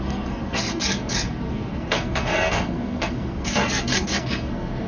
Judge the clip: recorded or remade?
remade